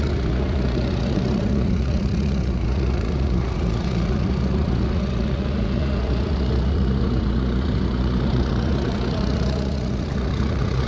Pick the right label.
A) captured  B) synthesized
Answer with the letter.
B